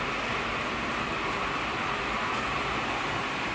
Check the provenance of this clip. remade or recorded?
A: remade